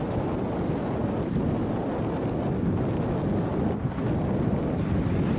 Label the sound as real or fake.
real